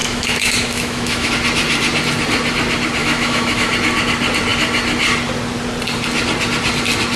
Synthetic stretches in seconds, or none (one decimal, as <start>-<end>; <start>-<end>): 0.0-1.3; 3.0-3.7